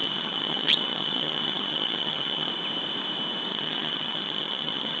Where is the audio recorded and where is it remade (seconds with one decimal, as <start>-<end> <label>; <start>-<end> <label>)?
0.0-2.5 remade; 2.5-3.5 recorded; 3.5-5.0 remade